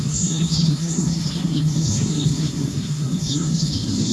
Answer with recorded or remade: remade